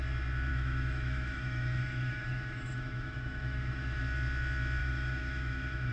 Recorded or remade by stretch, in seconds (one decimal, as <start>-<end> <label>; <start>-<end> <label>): 0.0-0.5 recorded; 0.5-4.0 remade; 4.0-4.8 recorded; 4.8-5.9 remade